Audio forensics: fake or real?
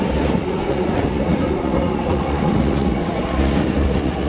fake